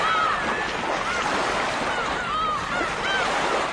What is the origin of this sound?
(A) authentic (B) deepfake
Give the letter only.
A